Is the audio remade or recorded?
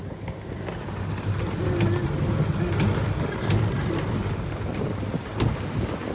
recorded